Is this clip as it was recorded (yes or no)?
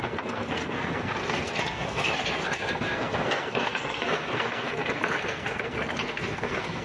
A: no